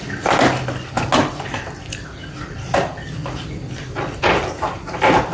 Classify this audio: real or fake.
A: real